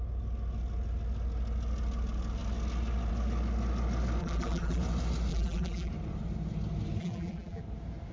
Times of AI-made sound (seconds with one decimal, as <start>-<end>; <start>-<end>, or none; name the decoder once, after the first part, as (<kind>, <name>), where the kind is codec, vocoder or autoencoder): 4.2-4.8 (vocoder, BigVGAN v2); 5.3-5.9; 7.0-7.6